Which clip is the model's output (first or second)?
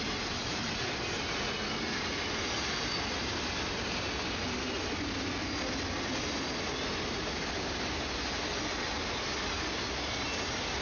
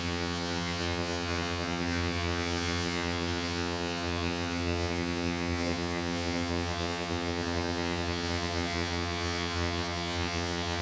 second